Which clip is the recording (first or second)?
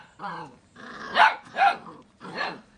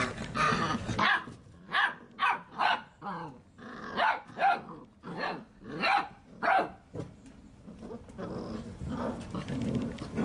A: second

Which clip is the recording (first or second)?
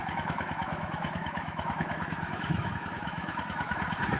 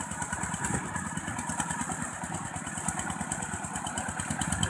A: second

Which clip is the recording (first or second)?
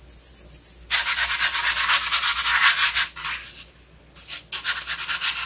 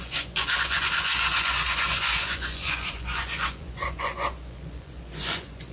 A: first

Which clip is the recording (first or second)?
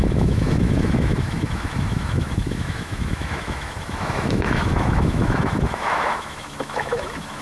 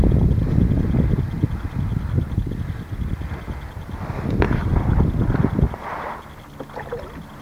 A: second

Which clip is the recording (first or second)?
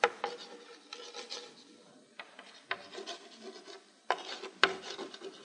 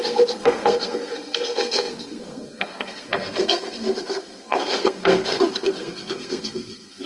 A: first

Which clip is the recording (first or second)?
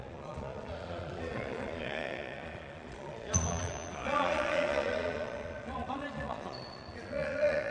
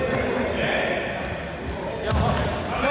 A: second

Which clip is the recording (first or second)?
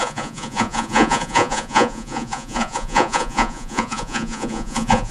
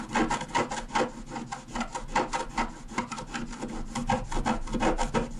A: second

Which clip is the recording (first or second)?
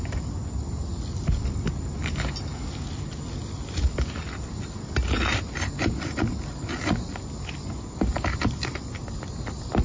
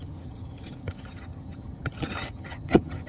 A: first